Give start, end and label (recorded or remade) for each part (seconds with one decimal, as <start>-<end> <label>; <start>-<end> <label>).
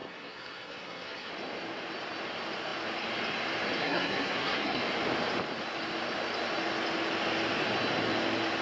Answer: 0.0-1.3 remade; 1.3-3.8 recorded; 3.8-4.8 remade; 4.8-8.6 recorded